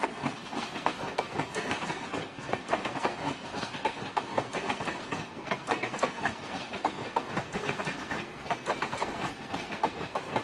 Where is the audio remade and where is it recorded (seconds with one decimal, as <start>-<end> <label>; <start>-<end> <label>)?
0.0-10.4 remade